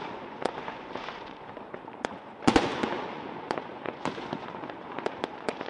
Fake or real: fake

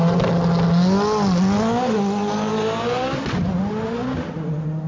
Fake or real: real